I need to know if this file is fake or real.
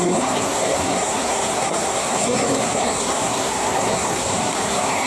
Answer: fake